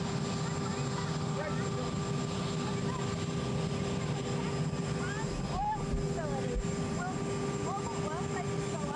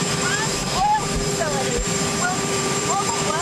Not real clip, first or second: second